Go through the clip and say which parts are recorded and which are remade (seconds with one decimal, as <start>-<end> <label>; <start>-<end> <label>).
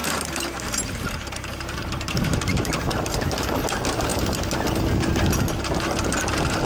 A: 0.0-3.5 remade; 3.5-6.7 recorded